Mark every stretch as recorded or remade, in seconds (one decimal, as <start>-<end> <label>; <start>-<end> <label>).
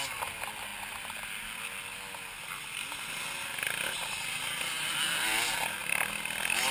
0.0-6.7 recorded